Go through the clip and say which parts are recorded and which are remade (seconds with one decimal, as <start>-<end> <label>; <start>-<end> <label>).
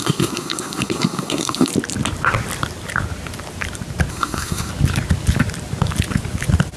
0.0-1.7 remade; 1.7-4.1 recorded; 4.1-4.7 remade; 4.7-6.8 recorded